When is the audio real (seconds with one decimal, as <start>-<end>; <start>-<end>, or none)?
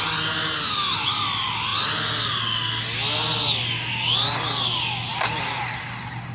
0.0-6.3